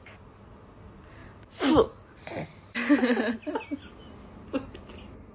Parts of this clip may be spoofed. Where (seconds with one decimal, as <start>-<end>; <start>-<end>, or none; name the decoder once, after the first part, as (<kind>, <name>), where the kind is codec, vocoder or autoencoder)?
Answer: none